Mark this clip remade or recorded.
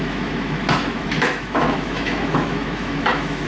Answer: remade